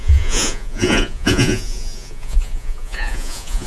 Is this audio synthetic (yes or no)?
yes